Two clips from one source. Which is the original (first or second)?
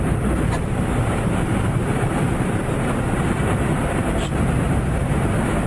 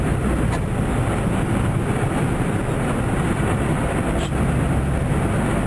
second